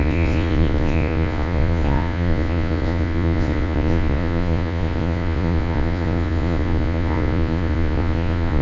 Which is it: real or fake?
fake